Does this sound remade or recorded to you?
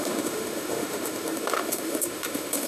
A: remade